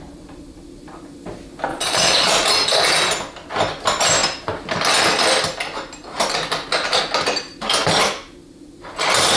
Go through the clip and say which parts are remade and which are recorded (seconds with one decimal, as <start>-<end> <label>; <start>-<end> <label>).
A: 0.0-1.7 recorded; 1.7-2.3 remade; 2.3-9.4 recorded